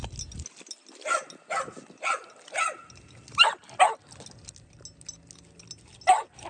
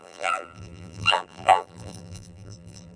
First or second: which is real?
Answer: first